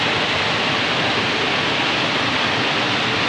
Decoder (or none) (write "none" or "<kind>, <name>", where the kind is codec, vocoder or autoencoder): none